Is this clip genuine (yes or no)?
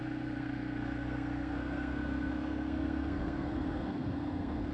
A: no